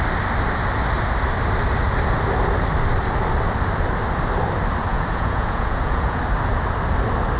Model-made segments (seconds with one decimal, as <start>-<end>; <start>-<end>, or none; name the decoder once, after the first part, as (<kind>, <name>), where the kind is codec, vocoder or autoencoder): 4.9-6.2 (vocoder, Vocos)